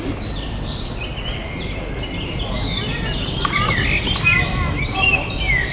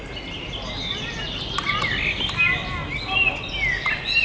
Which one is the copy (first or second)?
first